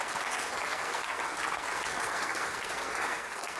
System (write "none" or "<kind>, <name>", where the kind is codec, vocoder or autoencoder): codec, SNAC